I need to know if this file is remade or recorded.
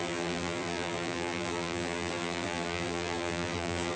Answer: remade